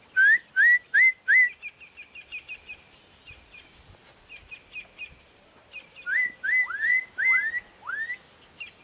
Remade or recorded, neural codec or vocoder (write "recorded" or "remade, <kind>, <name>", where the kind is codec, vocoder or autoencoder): recorded